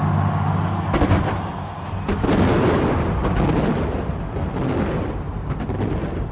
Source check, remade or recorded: recorded